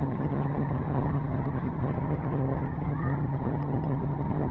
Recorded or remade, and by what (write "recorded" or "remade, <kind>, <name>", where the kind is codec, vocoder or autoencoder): remade, vocoder, HiFi-GAN